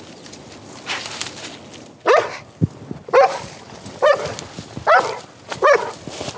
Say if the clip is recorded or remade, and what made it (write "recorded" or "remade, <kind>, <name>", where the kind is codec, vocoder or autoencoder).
recorded